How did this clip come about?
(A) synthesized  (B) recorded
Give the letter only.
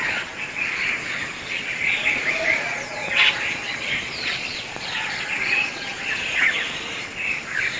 A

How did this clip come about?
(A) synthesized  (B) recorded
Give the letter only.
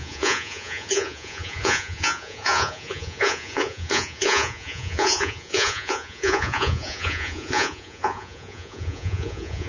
A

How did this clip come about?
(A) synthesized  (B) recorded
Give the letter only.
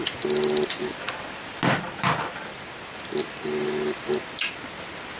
B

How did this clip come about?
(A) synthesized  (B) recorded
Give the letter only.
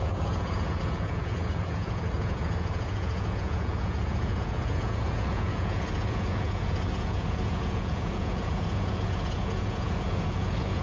A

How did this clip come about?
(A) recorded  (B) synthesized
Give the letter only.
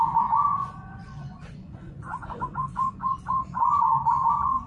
B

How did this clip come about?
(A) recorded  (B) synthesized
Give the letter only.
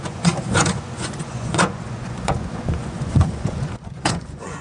B